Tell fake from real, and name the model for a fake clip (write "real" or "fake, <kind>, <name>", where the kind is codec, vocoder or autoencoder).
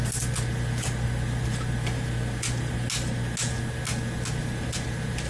real